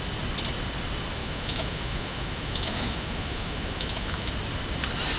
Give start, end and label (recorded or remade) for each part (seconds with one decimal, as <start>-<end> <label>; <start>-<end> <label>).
0.0-1.2 recorded; 1.2-4.3 remade; 4.3-5.2 recorded